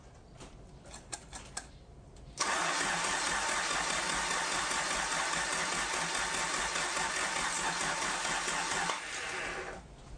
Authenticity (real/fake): real